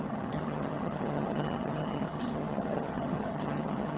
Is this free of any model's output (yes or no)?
no